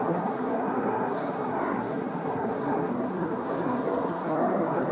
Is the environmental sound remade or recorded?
remade